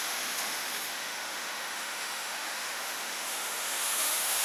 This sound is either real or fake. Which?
fake